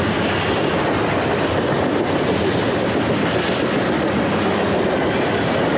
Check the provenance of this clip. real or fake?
real